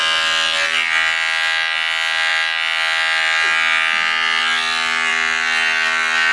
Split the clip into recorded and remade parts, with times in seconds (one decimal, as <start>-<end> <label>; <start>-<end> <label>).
0.0-6.3 recorded